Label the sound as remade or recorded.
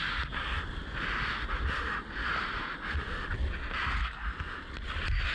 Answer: recorded